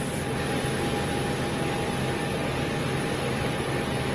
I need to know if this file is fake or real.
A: real